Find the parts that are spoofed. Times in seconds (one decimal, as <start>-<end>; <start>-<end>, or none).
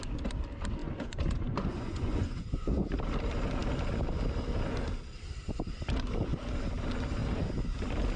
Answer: 0.8-2.9